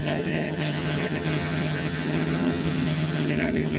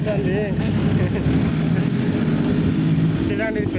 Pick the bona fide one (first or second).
second